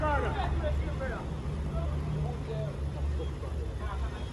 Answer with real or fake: real